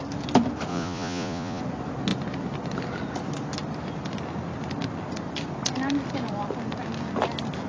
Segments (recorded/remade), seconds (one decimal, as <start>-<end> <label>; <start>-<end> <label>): 0.0-0.7 recorded; 0.7-1.6 remade; 1.6-7.7 recorded